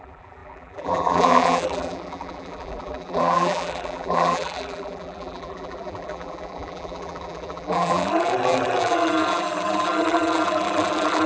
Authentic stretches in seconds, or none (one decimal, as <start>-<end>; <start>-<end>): none